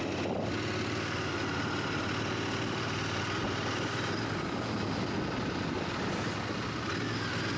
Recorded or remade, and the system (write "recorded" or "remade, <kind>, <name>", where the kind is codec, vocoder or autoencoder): recorded